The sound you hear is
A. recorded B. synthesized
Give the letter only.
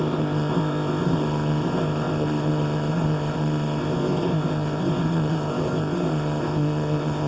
B